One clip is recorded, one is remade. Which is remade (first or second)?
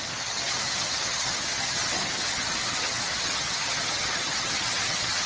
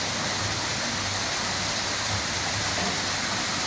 first